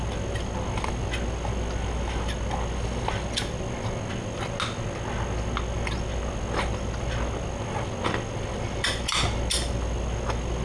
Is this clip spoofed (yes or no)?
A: no